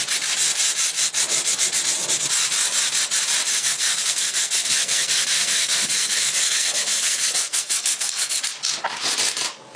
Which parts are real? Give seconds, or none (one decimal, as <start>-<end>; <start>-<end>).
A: 0.0-3.5; 8.4-9.8